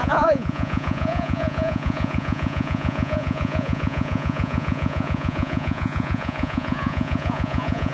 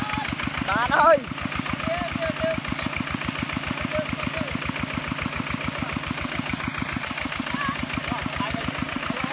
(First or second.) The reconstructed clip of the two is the first